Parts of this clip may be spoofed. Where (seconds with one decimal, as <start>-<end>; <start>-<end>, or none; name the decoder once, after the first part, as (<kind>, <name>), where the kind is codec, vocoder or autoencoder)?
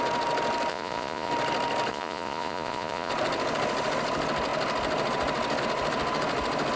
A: 0.7-1.3 (vocoder, Vocos); 1.9-3.1